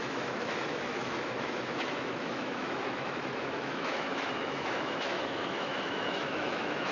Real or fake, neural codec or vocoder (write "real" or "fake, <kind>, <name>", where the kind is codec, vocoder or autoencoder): fake, autoencoder, DAC-VAE